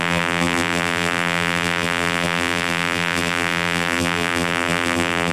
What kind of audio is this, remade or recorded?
remade